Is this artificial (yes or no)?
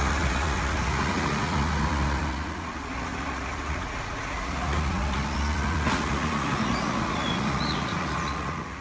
yes